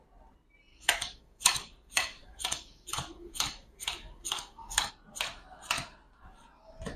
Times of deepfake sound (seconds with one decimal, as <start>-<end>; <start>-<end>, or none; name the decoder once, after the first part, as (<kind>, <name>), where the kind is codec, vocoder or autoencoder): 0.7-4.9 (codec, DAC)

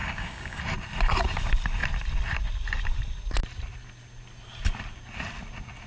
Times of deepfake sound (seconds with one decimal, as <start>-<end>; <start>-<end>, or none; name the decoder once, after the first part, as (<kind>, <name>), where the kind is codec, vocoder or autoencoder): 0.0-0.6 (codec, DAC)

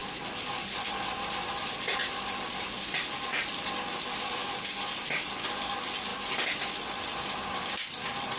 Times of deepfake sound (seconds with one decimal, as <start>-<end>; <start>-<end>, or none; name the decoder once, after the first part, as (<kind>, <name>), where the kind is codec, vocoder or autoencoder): none